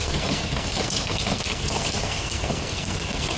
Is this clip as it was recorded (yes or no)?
no